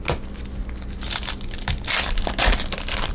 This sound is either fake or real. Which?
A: real